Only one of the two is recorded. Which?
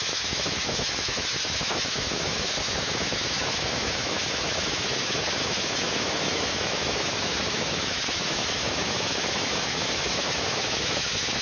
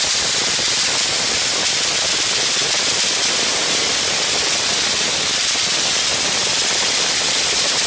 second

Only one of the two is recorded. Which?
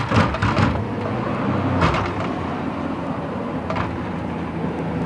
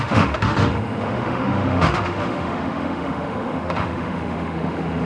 first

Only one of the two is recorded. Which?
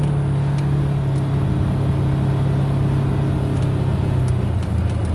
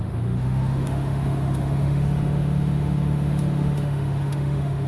first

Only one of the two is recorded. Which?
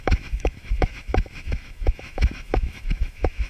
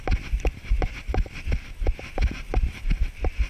second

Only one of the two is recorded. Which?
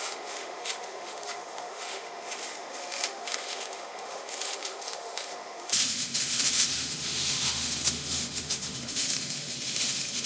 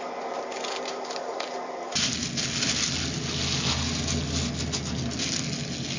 second